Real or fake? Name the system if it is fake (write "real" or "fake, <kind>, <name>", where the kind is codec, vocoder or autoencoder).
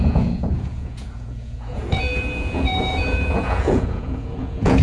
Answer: fake, vocoder, Vocos